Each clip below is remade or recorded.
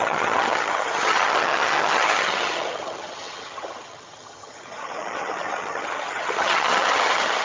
remade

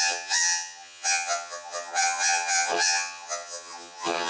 remade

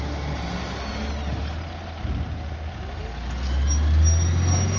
recorded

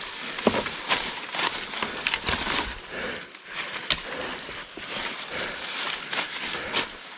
recorded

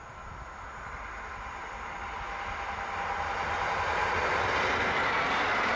recorded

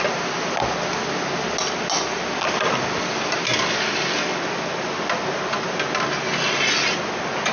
recorded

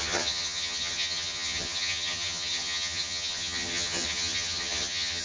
remade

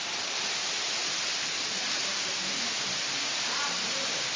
recorded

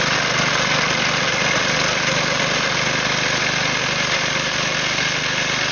recorded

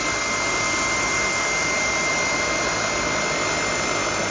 recorded